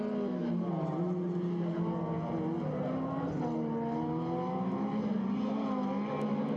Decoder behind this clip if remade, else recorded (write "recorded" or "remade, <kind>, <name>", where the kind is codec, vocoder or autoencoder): recorded